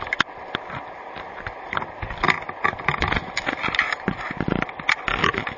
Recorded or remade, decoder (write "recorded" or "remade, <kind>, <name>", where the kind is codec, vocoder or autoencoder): recorded